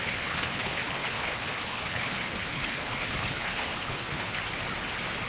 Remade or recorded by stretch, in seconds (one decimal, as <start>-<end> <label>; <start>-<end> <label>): 0.0-4.4 remade; 4.4-5.3 recorded

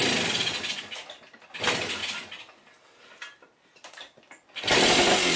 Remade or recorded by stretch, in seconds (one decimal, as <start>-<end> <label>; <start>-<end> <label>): 0.0-5.4 recorded

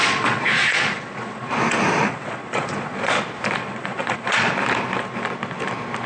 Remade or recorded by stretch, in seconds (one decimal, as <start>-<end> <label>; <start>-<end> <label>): 0.0-1.5 remade; 1.5-2.0 recorded; 2.0-3.2 remade; 3.2-3.6 recorded; 3.6-4.5 remade; 4.5-6.1 recorded

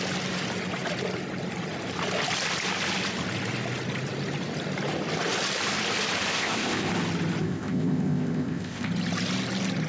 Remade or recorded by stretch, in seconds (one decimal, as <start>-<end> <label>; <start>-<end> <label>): 0.0-6.3 recorded; 6.3-6.9 remade; 6.9-7.4 recorded; 7.4-8.9 remade; 8.9-9.9 recorded

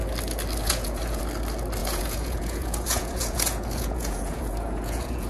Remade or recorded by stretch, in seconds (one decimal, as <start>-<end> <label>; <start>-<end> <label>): 0.0-0.6 recorded; 0.6-1.2 remade; 1.2-1.8 recorded; 1.8-5.3 remade